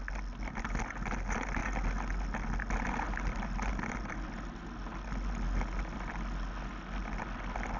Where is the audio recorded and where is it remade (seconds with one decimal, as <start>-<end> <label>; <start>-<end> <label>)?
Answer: 0.0-7.8 recorded